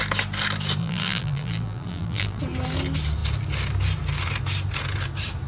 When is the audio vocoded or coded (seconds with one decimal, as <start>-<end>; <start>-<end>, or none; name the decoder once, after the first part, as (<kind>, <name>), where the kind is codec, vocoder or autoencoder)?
0.8-2.4 (vocoder, BigVGAN v2)